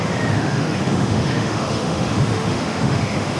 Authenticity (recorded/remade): remade